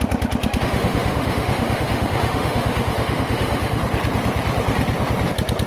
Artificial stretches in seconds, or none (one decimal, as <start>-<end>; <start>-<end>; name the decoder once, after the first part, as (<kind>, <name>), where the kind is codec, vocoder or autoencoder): 0.4-3.8 (autoencoder, DAC-VAE)